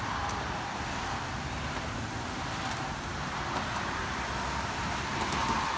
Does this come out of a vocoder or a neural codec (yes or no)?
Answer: no